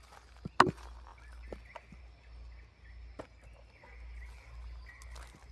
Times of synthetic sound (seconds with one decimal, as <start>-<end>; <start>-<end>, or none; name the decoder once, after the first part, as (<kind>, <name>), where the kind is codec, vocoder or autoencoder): none